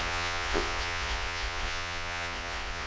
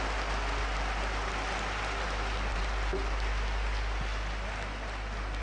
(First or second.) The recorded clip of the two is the second